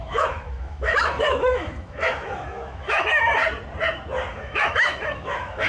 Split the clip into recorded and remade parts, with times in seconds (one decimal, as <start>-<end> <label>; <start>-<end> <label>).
0.0-3.4 remade; 3.4-4.3 recorded; 4.3-5.7 remade